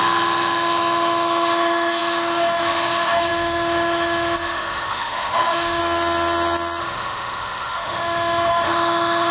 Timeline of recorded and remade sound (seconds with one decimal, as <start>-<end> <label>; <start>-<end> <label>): 0.0-5.8 remade; 5.8-6.8 recorded; 6.8-9.3 remade